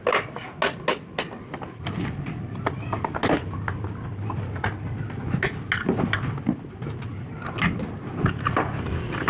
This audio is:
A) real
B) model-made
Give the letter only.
A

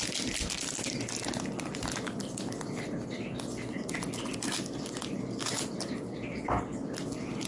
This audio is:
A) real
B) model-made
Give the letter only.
A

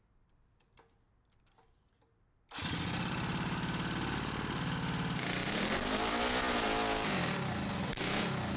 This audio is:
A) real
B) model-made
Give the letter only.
A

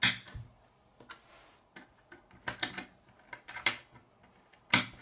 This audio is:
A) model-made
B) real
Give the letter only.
B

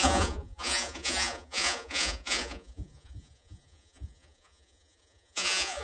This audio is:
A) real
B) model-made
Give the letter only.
B